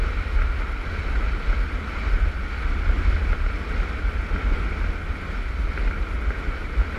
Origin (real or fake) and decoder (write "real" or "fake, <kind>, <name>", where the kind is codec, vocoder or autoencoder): real